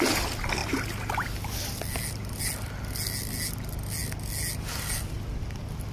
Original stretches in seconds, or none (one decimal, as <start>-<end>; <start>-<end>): 0.0-5.9